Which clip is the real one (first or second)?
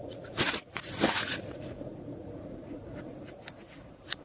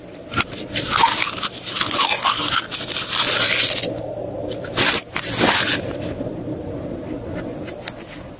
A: second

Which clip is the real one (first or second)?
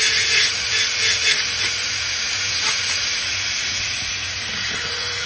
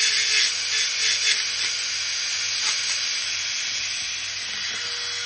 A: second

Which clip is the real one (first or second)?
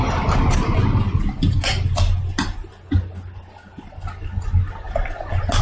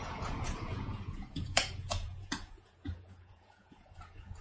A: first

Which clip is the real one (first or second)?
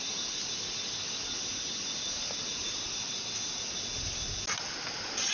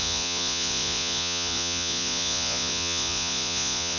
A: first